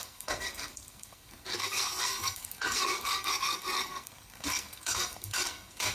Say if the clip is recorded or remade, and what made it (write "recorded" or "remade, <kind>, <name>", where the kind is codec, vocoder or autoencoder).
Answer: remade, codec, SNAC